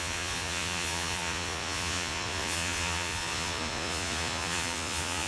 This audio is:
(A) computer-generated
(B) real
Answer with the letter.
A